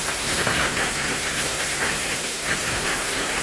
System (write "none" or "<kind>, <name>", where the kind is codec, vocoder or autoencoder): codec, SNAC